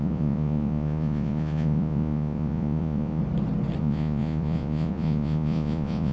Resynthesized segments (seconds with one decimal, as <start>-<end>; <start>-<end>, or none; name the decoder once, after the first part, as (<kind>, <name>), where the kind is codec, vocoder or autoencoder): 0.0-3.2 (vocoder, Vocos); 3.8-6.1